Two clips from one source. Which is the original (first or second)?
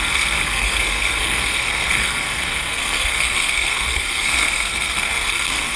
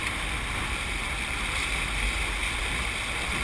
second